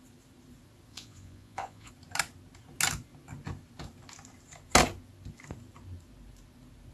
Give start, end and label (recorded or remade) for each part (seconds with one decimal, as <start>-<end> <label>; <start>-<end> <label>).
0.0-0.9 recorded; 0.9-1.9 remade; 1.9-6.9 recorded